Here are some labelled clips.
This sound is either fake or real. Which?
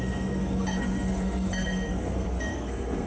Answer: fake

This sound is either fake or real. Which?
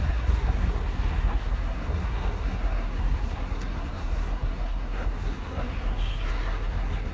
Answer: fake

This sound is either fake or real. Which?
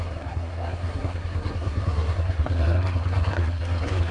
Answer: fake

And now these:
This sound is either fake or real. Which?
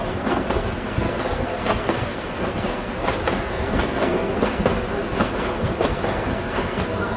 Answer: fake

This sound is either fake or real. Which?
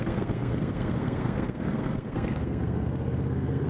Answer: fake